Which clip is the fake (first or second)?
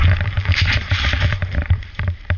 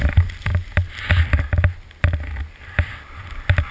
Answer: first